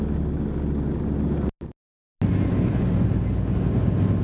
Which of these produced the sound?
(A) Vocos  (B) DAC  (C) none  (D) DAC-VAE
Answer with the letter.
C